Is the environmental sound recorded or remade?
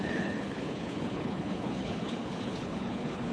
remade